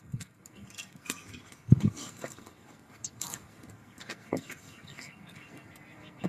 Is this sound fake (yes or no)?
yes